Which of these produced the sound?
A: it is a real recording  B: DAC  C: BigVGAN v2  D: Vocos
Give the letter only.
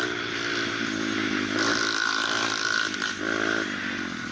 A